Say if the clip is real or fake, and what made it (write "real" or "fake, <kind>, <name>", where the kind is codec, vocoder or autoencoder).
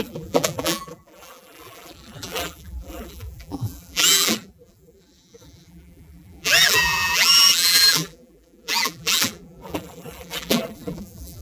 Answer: fake, vocoder, BigVGAN v2